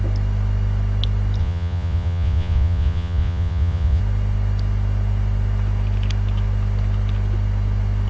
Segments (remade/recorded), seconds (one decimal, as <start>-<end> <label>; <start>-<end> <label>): 0.0-1.4 recorded; 1.4-4.0 remade; 4.0-8.1 recorded